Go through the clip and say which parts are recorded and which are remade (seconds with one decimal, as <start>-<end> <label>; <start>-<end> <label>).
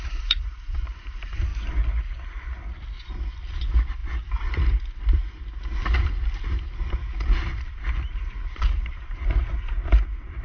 0.0-1.5 remade; 1.5-3.5 recorded; 3.5-10.4 remade